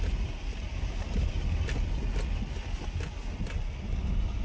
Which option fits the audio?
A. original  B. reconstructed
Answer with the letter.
A